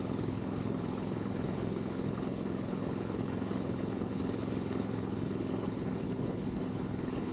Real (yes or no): no